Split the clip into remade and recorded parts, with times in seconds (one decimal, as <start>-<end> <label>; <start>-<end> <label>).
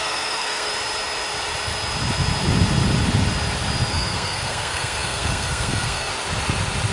0.0-0.7 remade; 0.7-3.9 recorded; 3.9-6.1 remade; 6.1-6.9 recorded